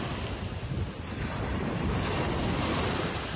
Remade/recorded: recorded